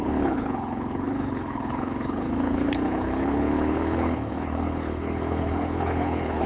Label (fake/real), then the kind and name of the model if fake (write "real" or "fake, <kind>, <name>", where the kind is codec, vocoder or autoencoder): fake, codec, HILCodec